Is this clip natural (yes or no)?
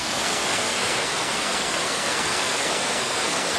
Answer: no